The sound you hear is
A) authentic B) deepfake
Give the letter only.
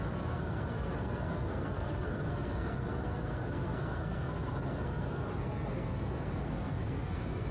B